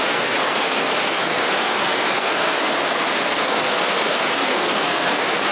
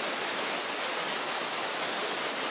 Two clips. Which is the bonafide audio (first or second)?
second